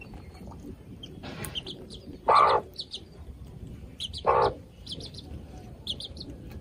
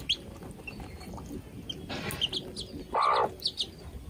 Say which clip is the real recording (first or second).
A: second